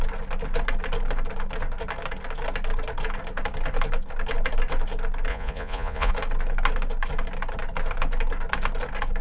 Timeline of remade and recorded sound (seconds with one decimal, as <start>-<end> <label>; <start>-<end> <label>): 0.0-5.3 recorded; 5.3-6.1 remade; 6.1-9.2 recorded